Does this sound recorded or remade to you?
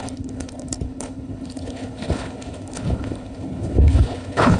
remade